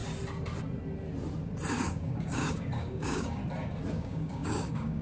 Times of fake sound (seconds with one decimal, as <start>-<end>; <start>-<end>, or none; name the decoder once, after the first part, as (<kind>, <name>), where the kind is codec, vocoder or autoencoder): 1.7-3.4 (codec, DAC); 3.9-5.0